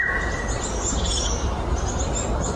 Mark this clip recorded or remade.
recorded